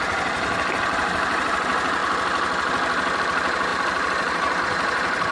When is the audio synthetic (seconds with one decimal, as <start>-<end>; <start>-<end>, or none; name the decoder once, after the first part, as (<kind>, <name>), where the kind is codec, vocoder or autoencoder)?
0.0-2.0 (vocoder, BigVGAN v2); 3.2-5.3